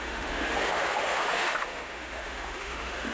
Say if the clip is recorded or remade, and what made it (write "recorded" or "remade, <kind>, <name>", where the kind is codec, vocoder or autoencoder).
remade, autoencoder, DAC-VAE